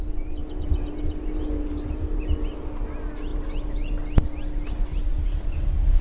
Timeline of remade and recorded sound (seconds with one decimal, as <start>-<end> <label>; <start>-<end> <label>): 0.0-6.0 recorded